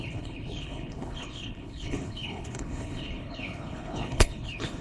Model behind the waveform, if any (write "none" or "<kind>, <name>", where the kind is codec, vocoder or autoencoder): codec, HILCodec